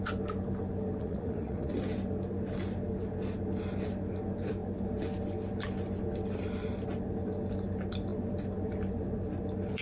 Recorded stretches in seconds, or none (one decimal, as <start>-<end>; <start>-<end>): 0.0-1.0; 1.7-9.8